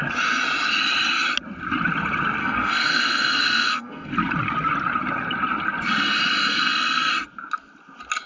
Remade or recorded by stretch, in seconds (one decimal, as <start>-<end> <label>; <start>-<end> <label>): 0.0-2.4 recorded; 2.4-4.1 remade; 4.1-6.5 recorded; 6.5-7.1 remade; 7.1-8.3 recorded